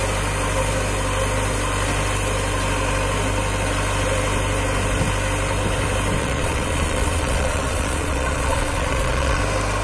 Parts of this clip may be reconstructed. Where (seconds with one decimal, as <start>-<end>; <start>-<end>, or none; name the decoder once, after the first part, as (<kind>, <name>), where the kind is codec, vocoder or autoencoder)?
6.2-9.4 (vocoder, Vocos)